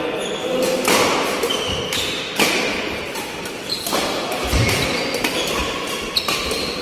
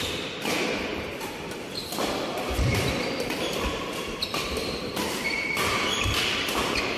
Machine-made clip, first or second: second